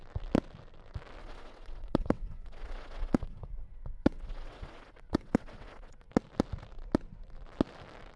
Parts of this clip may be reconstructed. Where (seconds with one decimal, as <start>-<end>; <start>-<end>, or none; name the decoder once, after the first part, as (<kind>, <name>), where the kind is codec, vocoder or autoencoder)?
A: 1.2-6.1 (vocoder, WaveNeXt)